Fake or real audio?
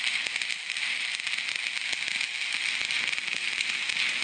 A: real